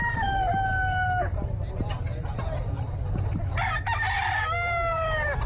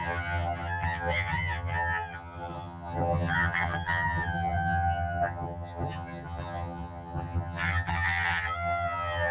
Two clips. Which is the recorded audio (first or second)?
first